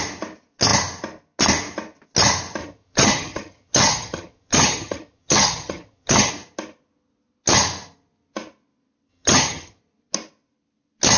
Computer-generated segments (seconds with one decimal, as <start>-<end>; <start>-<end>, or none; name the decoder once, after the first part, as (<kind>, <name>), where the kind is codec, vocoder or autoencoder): 2.6-6.3 (vocoder, HiFi-GAN); 9.1-9.8